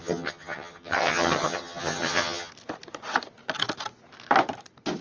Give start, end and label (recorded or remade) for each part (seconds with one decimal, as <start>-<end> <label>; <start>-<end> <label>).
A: 0.0-2.5 remade; 2.5-5.0 recorded